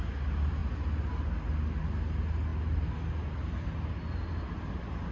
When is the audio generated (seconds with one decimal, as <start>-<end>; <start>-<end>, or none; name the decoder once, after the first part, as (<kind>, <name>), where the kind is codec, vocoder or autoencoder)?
none